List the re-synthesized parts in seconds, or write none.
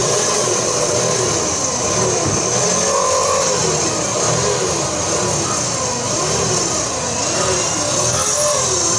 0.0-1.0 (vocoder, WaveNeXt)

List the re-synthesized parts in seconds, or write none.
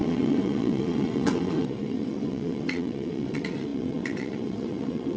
0.0-5.2 (vocoder, WaveNeXt)